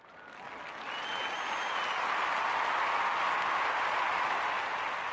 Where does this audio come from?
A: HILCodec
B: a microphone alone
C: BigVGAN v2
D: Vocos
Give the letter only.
B